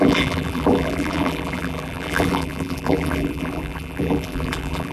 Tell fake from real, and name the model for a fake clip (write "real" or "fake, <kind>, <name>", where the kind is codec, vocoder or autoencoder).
fake, vocoder, BigVGAN v2